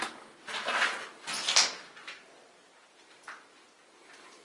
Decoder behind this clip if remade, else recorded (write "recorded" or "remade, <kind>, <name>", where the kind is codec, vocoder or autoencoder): recorded